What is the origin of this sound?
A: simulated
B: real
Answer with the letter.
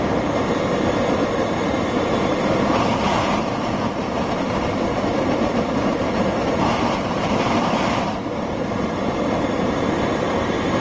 A